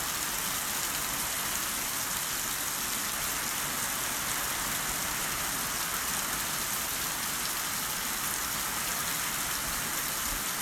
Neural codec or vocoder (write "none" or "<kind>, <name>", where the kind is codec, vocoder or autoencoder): none